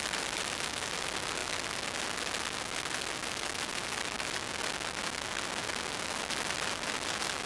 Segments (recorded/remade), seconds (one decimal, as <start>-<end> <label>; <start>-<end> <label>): 0.0-7.5 recorded

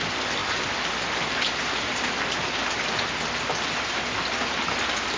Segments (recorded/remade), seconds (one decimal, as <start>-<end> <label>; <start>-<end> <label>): 0.0-5.2 recorded

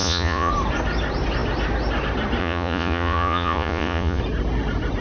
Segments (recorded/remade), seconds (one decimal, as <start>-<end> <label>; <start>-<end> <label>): 0.0-0.5 remade; 0.5-2.4 recorded; 2.4-4.2 remade; 4.2-5.0 recorded

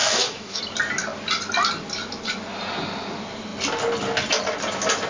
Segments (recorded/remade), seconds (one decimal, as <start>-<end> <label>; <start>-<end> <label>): 0.0-0.6 remade; 0.6-5.1 recorded